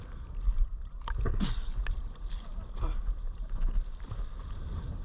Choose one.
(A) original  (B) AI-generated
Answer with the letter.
A